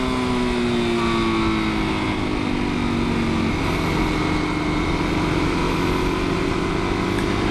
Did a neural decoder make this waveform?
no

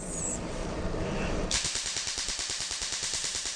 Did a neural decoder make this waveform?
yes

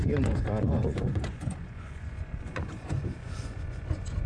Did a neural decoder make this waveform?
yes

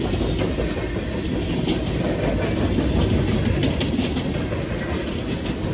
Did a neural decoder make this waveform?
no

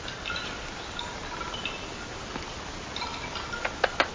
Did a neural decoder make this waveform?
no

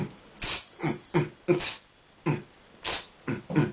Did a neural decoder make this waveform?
no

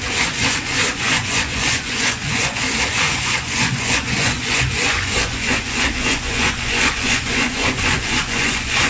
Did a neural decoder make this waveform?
yes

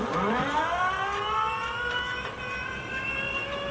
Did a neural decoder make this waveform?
no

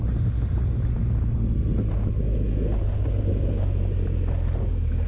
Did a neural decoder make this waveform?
no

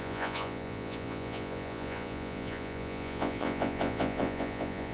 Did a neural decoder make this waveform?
yes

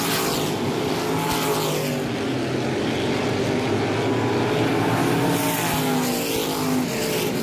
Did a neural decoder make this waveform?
no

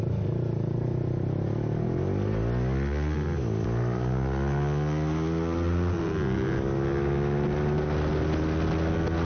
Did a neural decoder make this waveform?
no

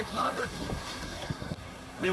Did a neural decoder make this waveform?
yes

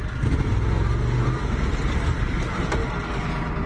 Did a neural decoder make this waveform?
no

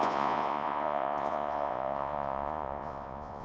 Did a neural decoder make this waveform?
yes